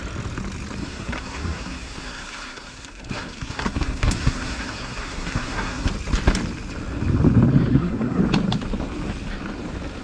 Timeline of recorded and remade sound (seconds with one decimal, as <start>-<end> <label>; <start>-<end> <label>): 0.0-0.8 recorded; 0.8-5.9 remade; 5.9-7.7 recorded; 7.7-8.2 remade; 8.2-10.0 recorded